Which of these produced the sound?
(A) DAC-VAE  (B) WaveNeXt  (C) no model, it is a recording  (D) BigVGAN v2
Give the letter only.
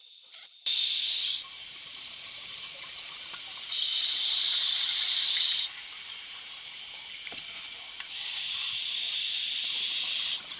D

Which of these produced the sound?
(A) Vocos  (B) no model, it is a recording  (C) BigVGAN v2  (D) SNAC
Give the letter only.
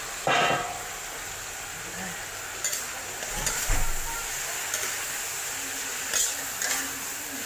B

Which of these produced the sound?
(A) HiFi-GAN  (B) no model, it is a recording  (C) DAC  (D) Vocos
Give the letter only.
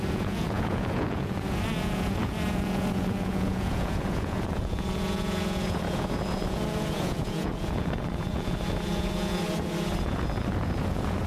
D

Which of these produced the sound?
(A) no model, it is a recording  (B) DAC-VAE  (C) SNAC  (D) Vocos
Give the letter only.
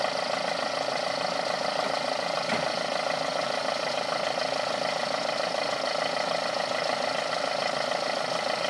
A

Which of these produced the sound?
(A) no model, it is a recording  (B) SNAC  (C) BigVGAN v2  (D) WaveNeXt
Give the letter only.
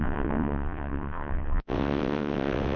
D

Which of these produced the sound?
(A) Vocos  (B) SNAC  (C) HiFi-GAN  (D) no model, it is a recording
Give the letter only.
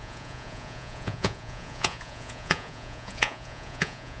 A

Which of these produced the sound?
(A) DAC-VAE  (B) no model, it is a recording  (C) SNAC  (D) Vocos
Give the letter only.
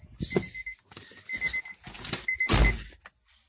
B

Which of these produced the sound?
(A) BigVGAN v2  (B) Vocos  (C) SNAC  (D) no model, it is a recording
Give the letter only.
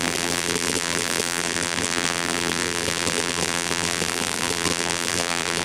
A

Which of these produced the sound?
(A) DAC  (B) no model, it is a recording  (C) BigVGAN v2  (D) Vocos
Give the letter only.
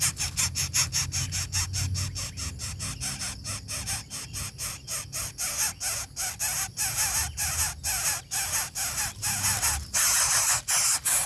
B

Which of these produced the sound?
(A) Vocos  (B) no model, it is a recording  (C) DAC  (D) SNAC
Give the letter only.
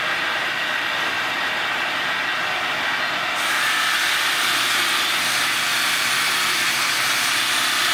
B